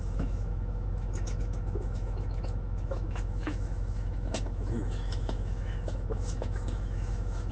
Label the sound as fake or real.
fake